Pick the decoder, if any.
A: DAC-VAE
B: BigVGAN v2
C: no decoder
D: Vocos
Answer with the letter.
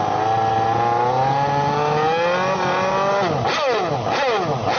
C